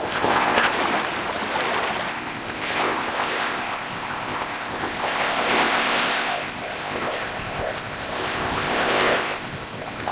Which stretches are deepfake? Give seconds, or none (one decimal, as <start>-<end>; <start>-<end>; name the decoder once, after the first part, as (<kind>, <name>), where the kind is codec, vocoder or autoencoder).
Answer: 0.0-0.7 (codec, ZipCodec); 2.1-10.1